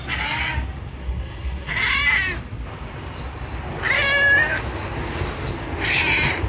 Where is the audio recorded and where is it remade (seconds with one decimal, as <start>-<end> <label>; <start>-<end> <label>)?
0.0-1.0 recorded; 1.0-1.7 remade; 1.7-6.5 recorded